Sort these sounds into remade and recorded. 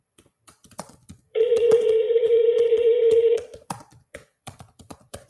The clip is remade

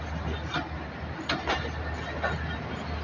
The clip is recorded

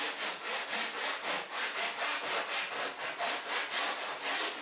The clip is recorded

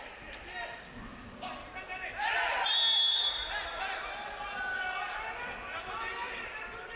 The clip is recorded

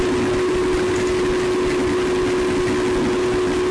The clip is recorded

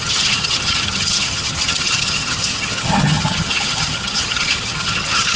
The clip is remade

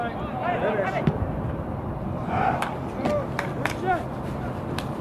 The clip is recorded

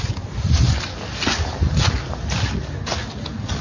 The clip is recorded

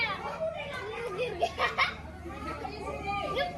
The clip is recorded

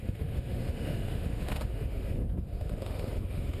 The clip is remade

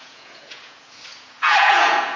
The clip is remade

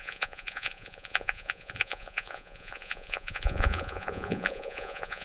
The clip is remade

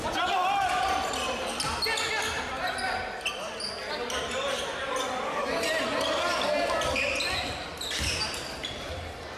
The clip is recorded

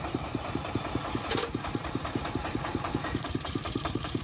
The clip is remade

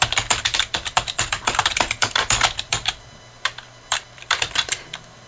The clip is remade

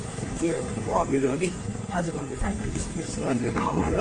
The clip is remade